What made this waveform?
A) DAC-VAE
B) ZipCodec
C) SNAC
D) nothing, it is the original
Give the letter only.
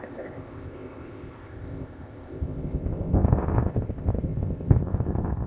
B